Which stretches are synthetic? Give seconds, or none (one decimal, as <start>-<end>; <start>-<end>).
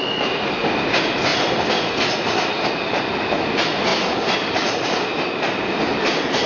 none